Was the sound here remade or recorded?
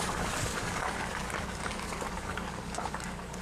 remade